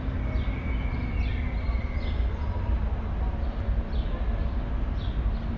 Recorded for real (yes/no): yes